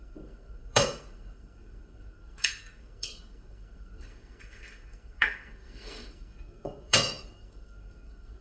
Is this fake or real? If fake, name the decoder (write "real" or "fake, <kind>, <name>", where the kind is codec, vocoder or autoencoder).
fake, codec, SNAC